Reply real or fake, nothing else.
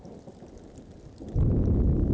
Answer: real